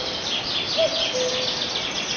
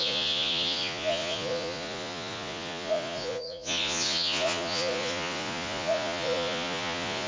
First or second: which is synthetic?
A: second